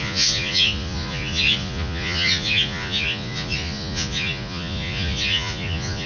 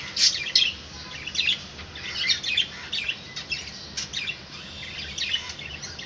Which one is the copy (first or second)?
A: first